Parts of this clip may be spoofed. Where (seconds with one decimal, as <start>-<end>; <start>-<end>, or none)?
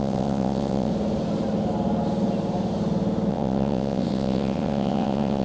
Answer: 0.0-0.9; 3.3-5.4